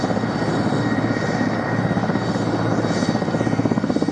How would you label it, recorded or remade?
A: recorded